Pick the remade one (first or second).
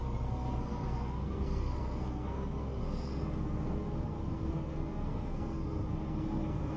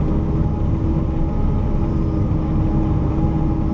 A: first